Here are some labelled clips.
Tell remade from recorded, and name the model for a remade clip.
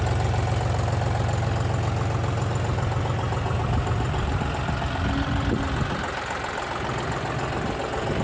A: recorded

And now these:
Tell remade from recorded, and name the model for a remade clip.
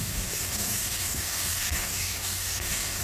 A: remade, codec, DAC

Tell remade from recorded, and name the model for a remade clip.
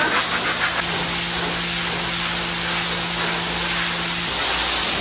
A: recorded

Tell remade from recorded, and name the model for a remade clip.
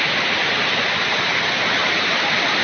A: recorded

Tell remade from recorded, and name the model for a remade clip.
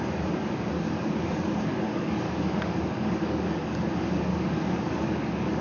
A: remade, codec, DAC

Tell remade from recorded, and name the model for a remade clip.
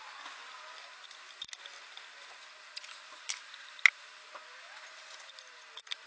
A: recorded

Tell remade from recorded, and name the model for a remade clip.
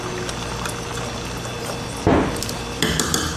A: recorded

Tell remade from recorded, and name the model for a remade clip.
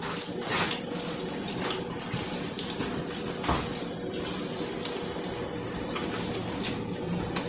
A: recorded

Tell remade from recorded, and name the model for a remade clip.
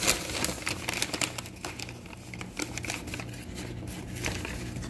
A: recorded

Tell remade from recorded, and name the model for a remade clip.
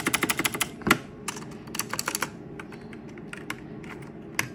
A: recorded